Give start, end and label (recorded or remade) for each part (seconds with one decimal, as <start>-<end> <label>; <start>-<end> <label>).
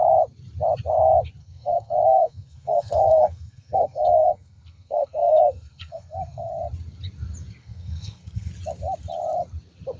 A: 0.0-1.4 recorded; 1.4-6.5 remade; 6.5-7.6 recorded; 7.6-8.5 remade; 8.5-10.0 recorded